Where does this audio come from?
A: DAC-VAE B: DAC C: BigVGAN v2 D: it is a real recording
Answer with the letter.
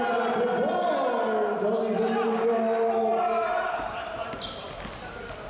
D